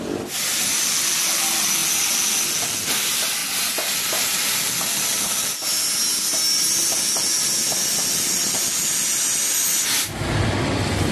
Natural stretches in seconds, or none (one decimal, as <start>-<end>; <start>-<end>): 0.0-11.1

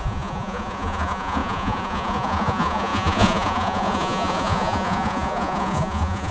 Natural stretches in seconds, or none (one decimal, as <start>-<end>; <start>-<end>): none

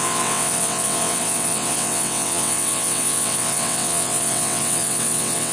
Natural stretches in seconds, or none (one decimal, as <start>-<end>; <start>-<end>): none